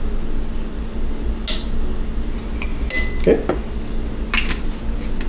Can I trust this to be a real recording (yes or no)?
yes